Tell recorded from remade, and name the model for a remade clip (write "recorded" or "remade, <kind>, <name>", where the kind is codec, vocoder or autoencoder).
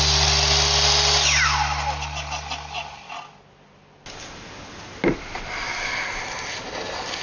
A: recorded